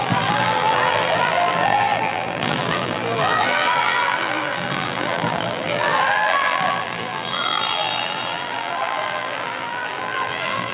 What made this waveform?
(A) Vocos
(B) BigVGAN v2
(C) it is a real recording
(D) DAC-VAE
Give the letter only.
B